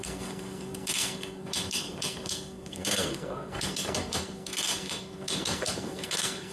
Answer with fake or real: fake